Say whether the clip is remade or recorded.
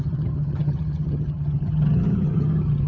remade